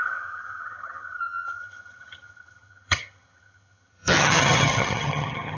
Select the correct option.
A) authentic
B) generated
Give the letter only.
B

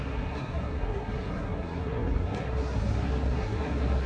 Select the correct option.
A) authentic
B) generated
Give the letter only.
B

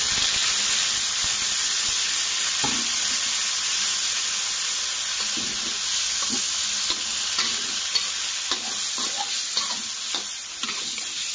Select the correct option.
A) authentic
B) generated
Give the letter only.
A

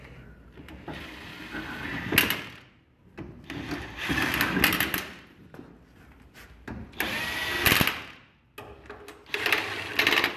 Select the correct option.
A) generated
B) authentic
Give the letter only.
B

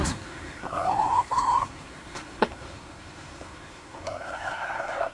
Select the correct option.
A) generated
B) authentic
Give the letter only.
A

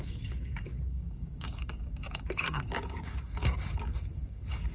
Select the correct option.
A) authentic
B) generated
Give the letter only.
B